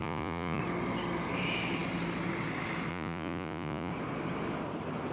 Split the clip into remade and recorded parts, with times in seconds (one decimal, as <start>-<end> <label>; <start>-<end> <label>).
0.0-0.6 remade; 0.6-2.9 recorded; 2.9-3.9 remade; 3.9-5.1 recorded